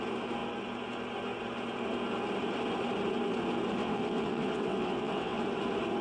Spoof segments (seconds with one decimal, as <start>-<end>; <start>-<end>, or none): 3.8-5.4